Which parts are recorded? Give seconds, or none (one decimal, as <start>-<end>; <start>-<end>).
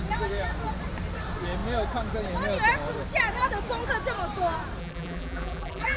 0.0-4.8